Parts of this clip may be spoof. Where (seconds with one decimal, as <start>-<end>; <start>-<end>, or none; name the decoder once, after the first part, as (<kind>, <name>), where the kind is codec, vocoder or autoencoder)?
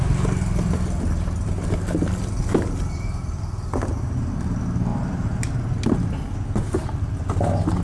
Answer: 4.9-5.8 (vocoder, BigVGAN v2)